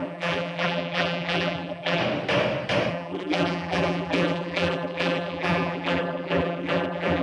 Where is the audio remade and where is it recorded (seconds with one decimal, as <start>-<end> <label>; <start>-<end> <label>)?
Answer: 0.0-2.0 remade; 2.0-2.9 recorded; 2.9-7.2 remade